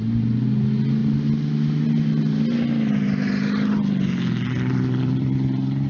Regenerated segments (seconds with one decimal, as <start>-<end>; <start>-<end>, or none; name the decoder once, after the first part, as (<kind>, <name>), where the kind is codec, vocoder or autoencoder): none